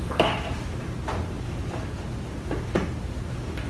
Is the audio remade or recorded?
recorded